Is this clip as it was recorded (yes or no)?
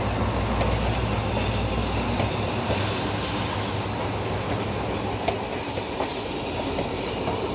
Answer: yes